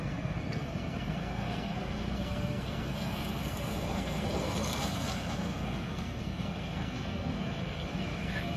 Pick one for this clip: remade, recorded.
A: remade